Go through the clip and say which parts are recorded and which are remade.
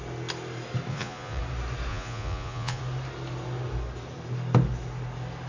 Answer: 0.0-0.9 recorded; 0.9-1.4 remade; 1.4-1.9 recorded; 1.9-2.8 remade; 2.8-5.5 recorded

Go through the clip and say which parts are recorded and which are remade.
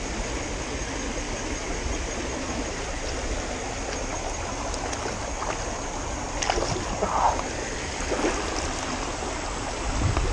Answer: 0.0-10.3 recorded